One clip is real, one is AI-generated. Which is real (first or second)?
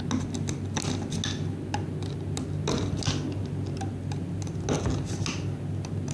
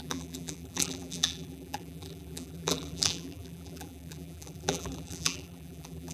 first